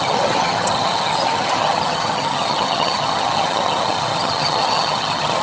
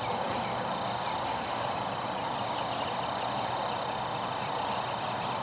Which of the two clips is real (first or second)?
second